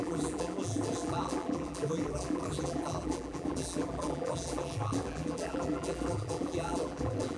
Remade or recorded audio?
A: remade